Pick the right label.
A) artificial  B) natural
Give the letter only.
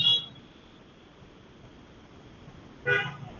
B